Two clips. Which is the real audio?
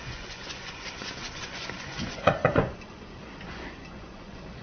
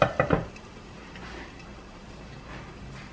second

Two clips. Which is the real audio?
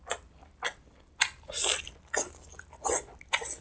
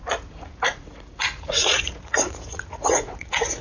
first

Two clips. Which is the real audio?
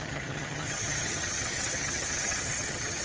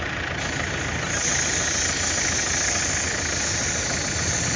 second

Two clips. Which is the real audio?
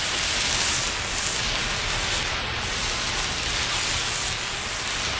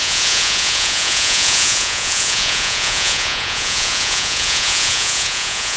first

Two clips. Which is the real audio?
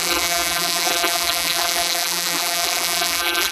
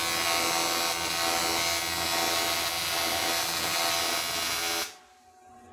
second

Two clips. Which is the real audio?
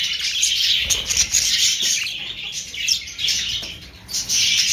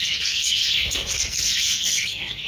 first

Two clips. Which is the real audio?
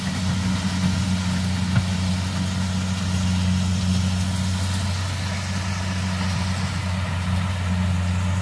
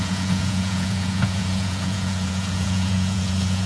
first